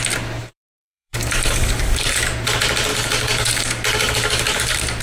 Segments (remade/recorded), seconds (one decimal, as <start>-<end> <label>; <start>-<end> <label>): 0.0-0.4 recorded; 0.4-2.2 remade; 2.2-2.9 recorded; 2.9-5.0 remade